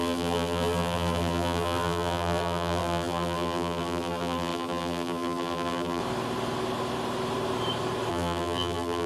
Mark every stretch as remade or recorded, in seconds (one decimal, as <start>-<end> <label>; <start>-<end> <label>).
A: 0.0-6.0 remade; 6.0-8.1 recorded; 8.1-9.1 remade